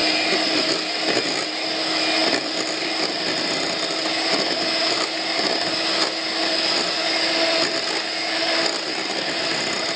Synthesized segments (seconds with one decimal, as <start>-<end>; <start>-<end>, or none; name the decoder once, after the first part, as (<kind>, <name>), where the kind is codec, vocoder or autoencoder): none